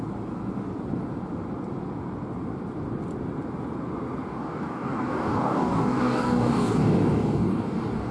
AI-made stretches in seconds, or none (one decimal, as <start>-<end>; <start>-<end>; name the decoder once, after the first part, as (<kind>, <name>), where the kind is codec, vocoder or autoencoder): 4.3-8.1 (codec, DAC)